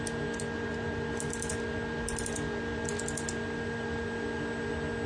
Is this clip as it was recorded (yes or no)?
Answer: yes